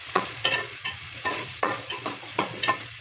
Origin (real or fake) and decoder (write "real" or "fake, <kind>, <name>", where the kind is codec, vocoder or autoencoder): fake, vocoder, Vocos